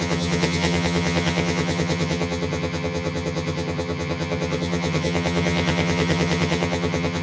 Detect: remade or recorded remade